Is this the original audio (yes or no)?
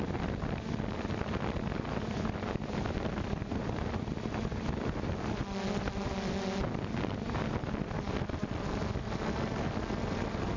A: yes